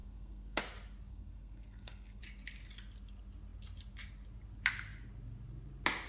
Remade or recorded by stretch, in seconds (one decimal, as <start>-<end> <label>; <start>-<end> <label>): 0.0-0.6 remade; 0.6-1.1 recorded; 1.1-2.2 remade; 2.2-6.1 recorded